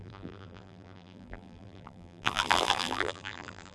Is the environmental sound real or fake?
fake